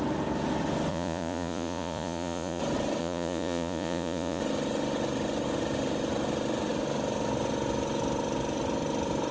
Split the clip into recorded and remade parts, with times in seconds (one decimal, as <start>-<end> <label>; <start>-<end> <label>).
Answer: 0.0-0.9 recorded; 0.9-2.6 remade; 2.6-3.0 recorded; 3.0-4.4 remade; 4.4-9.3 recorded